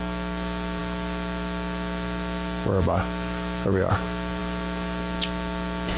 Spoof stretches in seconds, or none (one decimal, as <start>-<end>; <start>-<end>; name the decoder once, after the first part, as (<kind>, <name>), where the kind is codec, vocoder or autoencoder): none

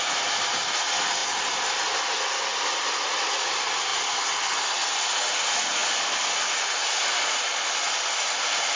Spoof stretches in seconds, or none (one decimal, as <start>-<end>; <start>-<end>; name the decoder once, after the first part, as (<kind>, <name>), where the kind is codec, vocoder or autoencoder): none

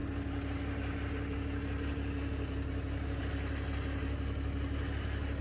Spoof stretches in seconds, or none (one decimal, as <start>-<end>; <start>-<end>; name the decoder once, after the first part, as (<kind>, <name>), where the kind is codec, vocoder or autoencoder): none

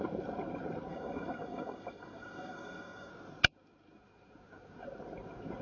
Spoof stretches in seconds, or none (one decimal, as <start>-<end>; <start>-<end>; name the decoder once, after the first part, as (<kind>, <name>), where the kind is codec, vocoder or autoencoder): 0.9-3.1 (codec, DAC)

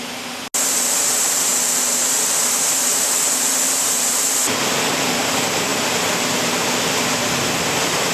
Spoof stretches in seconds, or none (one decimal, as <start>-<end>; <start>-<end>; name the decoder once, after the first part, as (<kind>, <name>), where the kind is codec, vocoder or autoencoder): none